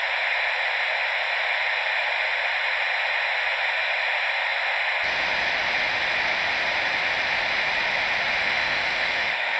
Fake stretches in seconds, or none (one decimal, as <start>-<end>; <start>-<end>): 8.4-9.6